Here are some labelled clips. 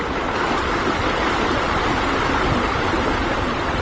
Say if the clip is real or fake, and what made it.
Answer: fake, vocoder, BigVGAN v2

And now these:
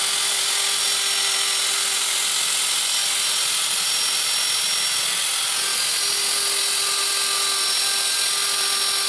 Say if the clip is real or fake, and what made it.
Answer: real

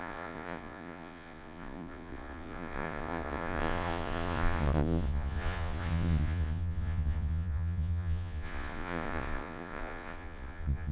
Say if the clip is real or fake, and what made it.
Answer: fake, vocoder, Vocos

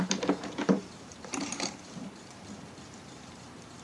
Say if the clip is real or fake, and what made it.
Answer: fake, vocoder, BigVGAN v2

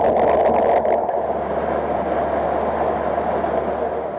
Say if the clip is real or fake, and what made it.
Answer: real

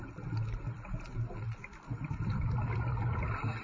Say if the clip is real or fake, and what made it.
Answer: real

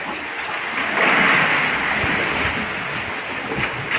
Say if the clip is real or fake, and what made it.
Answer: real